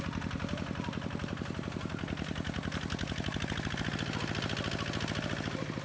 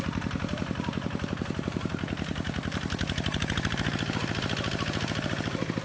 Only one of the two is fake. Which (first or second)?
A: second